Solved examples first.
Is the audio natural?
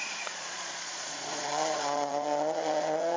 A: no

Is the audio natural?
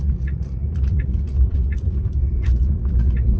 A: no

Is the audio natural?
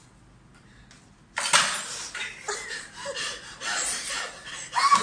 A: yes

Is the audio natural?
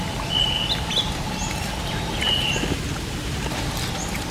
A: yes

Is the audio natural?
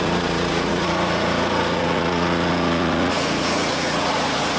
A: no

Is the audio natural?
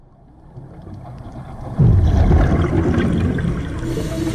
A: yes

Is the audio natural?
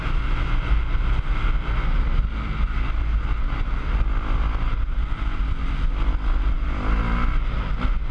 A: yes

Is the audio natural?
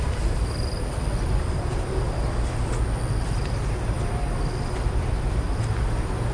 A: yes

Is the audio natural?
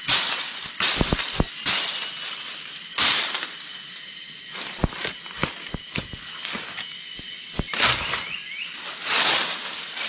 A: yes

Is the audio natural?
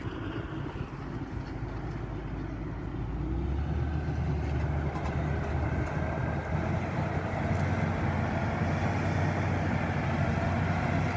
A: yes